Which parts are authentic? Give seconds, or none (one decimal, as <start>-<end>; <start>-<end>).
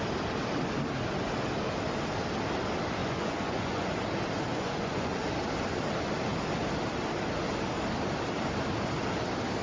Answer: 0.0-3.0; 3.9-4.5; 5.2-9.6